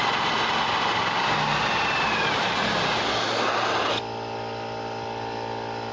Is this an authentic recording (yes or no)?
yes